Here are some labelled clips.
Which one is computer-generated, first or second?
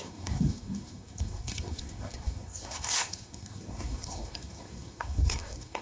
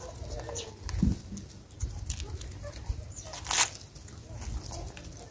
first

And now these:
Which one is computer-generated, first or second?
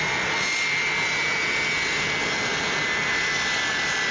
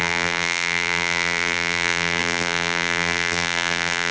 second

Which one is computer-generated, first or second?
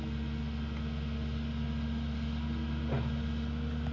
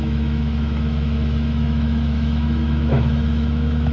second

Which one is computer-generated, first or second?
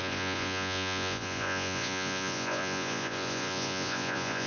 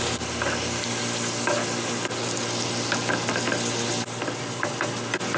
first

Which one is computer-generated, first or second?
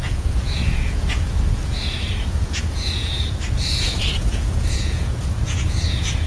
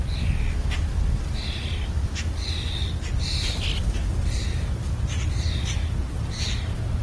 first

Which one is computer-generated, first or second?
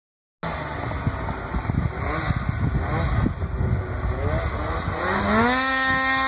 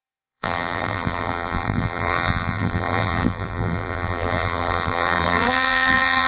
second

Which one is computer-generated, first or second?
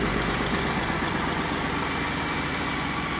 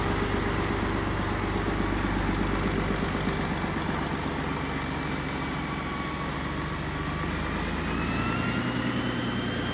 first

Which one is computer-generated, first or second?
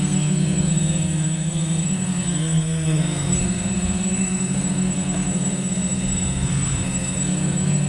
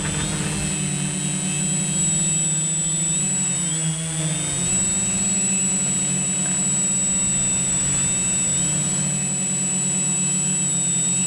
first